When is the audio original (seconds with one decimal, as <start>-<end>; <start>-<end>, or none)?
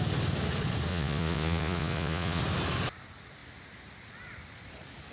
0.0-0.9; 2.4-5.1